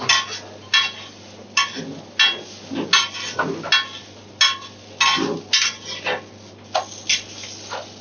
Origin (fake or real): real